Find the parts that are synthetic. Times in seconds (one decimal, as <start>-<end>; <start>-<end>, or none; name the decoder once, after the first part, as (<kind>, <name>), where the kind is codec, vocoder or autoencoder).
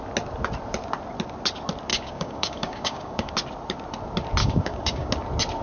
1.9-3.3 (codec, DAC); 4.4-5.1